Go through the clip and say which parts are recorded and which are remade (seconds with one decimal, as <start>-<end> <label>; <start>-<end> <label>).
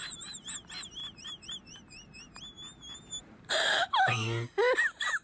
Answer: 0.0-0.5 remade; 0.5-1.0 recorded; 1.0-2.3 remade; 2.3-3.2 recorded; 3.2-3.8 remade; 3.8-5.2 recorded